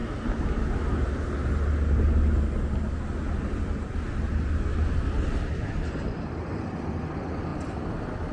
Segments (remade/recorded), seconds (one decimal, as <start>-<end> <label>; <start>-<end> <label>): 0.0-8.3 recorded

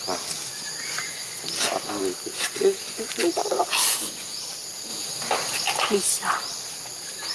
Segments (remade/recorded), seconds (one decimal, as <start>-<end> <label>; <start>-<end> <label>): 0.0-0.5 recorded; 0.5-1.7 remade; 1.7-2.3 recorded; 2.3-4.4 remade; 4.4-7.3 recorded